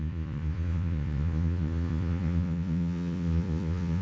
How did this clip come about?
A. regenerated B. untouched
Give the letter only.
A